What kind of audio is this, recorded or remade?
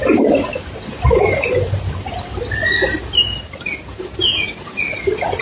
recorded